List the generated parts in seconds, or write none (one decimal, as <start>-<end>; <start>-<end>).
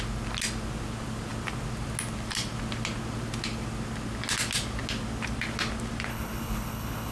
6.1-7.1